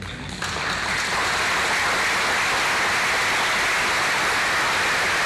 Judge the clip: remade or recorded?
recorded